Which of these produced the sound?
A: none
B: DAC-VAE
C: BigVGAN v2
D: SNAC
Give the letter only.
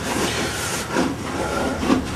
C